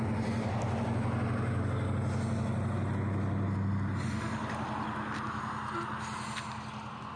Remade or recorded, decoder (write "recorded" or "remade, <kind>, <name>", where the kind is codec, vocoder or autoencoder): recorded